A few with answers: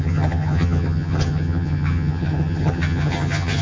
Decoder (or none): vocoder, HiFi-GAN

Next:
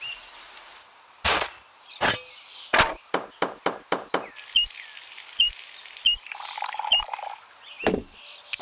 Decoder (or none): none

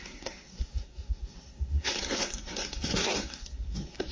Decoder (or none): codec, SNAC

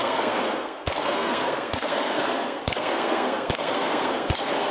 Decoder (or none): codec, SNAC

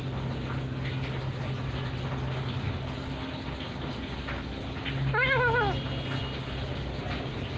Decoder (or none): none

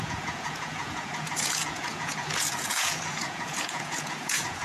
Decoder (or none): vocoder, Vocos